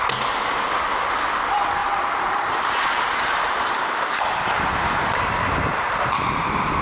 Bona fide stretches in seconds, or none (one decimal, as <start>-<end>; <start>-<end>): 0.0-1.8; 4.9-6.8